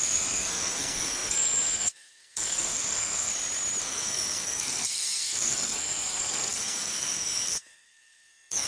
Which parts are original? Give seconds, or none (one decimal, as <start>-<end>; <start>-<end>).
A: 3.3-3.8